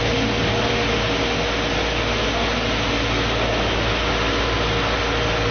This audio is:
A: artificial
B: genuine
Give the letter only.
B